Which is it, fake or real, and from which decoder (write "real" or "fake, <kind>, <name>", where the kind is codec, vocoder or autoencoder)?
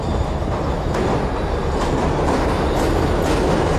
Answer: real